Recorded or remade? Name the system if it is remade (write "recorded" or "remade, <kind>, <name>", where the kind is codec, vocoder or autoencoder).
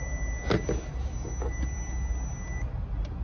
recorded